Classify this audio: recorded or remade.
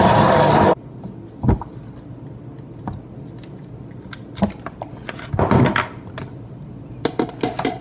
recorded